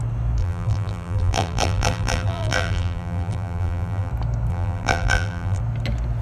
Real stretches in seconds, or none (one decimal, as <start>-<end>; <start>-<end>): 0.0-0.4; 4.1-4.5; 5.6-6.2